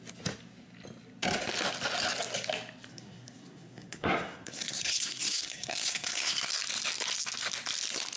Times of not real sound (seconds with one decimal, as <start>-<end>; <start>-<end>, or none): 2.9-6.5